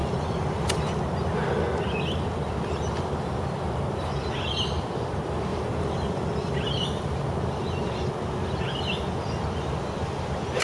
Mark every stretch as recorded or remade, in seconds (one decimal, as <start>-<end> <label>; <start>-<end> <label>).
0.0-1.0 remade; 1.0-5.5 recorded; 5.5-6.7 remade; 6.7-10.6 recorded